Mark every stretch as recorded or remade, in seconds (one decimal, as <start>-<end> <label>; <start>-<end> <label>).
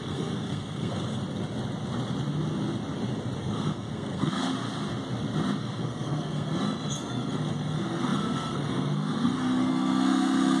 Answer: 0.0-1.2 remade; 1.2-3.4 recorded; 3.4-4.5 remade; 4.5-5.6 recorded; 5.6-10.6 remade